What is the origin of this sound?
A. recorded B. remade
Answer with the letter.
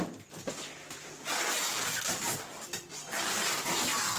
A